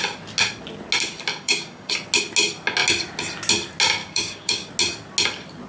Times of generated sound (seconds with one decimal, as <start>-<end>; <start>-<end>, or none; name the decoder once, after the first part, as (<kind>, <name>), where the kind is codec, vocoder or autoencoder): 1.3-1.9 (codec, DAC); 4.0-4.7